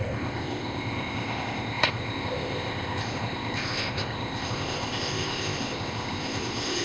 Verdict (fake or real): fake